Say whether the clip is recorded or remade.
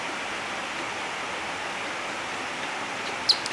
recorded